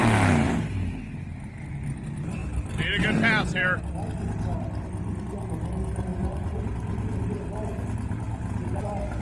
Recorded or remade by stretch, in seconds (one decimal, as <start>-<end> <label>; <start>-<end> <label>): 0.0-6.1 recorded; 6.1-6.6 remade; 6.6-9.2 recorded